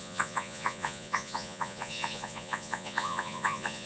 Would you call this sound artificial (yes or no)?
yes